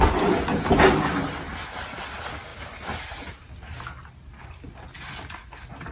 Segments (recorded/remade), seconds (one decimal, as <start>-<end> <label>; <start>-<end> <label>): 0.0-2.5 recorded; 2.5-3.5 remade; 3.5-5.9 recorded